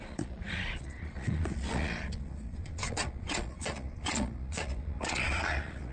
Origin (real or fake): fake